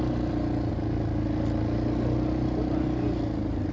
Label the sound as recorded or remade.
recorded